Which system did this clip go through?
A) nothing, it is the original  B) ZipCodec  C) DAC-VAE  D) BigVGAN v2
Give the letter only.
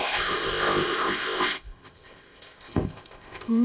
B